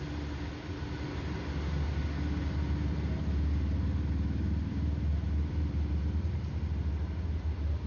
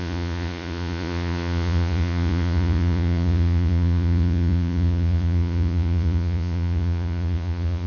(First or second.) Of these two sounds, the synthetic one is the second